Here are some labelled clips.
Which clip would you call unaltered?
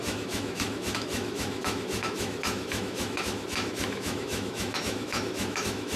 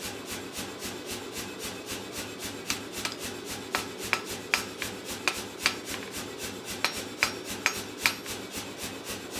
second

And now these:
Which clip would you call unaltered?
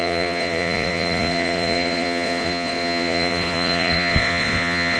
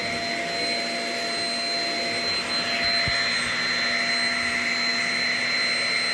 second